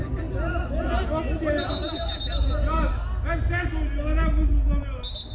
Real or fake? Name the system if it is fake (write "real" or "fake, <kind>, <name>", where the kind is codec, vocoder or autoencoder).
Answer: real